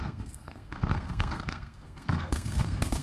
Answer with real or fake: fake